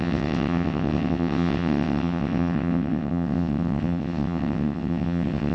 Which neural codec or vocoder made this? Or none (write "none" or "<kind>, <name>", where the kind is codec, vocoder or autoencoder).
vocoder, WaveNeXt